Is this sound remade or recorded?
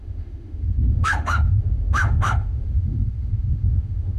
remade